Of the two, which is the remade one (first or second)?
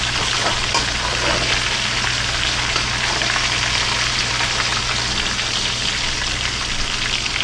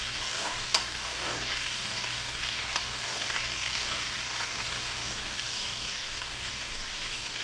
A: second